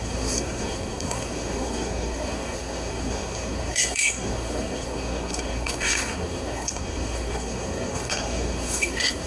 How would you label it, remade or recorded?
remade